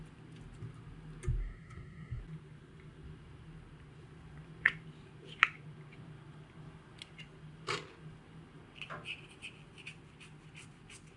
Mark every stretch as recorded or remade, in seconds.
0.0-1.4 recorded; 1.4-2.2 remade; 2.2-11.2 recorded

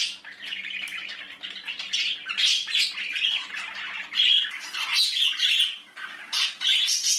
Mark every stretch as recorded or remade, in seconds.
0.0-7.2 recorded

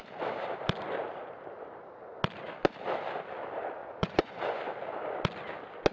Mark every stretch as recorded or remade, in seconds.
0.0-3.8 recorded; 3.8-4.6 remade; 4.6-5.9 recorded

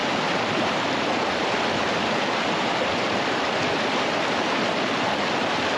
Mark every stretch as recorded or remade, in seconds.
0.0-5.8 recorded

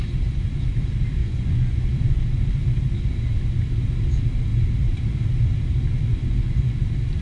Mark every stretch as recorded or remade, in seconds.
0.0-1.2 recorded; 1.2-2.2 remade; 2.2-6.1 recorded; 6.1-6.8 remade; 6.8-7.2 recorded

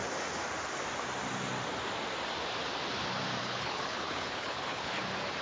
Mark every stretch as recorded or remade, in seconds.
0.0-3.4 recorded; 3.4-5.0 remade; 5.0-5.4 recorded

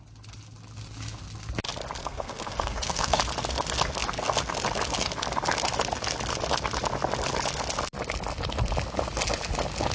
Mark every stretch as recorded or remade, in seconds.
0.0-2.0 recorded; 2.0-3.2 remade; 3.2-9.9 recorded

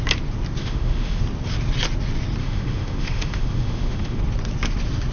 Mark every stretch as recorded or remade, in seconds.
0.0-0.6 recorded; 0.6-1.2 remade; 1.2-2.4 recorded; 2.4-4.2 remade; 4.2-5.1 recorded